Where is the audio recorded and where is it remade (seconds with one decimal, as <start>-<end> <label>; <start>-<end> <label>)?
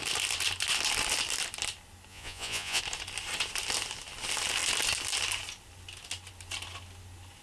0.0-2.1 recorded; 2.1-2.8 remade; 2.8-7.4 recorded